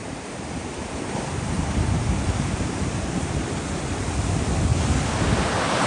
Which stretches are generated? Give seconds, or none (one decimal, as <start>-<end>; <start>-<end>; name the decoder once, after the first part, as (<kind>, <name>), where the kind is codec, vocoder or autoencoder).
0.0-3.3 (vocoder, BigVGAN v2)